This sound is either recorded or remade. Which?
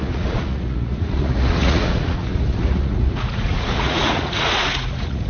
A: remade